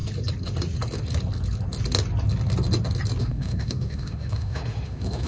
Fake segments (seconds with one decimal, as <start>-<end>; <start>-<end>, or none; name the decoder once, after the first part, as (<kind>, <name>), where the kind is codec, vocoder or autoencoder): 3.2-5.3 (autoencoder, DAC-VAE)